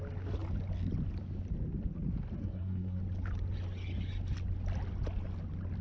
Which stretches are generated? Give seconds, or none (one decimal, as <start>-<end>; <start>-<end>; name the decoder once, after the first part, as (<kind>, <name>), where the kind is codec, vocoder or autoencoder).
2.4-3.0 (codec, SNAC)